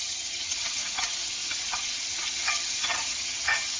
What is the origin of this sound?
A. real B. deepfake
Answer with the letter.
B